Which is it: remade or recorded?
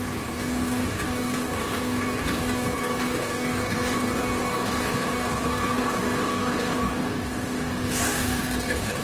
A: remade